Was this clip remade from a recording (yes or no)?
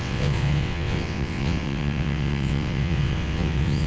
yes